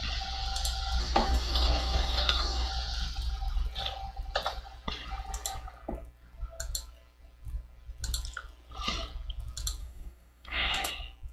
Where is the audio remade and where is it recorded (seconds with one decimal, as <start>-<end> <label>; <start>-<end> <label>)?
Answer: 0.0-1.0 recorded; 1.0-2.7 remade; 2.7-9.8 recorded; 9.8-10.9 remade; 10.9-11.3 recorded